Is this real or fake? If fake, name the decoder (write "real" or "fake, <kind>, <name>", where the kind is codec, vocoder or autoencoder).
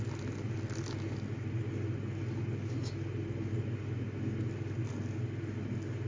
real